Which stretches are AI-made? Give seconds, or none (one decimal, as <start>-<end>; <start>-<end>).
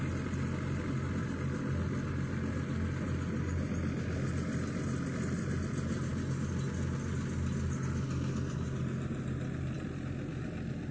none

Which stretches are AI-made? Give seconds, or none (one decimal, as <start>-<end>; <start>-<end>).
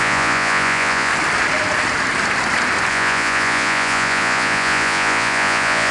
0.0-1.1; 2.9-5.9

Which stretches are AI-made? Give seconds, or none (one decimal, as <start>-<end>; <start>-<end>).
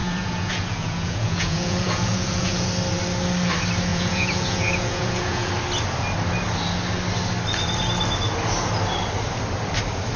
0.0-2.7; 3.9-5.5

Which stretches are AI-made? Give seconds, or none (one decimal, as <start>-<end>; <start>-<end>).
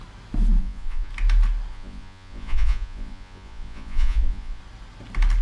0.6-1.1; 1.7-4.6